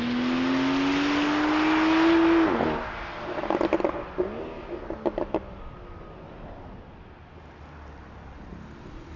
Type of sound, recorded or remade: recorded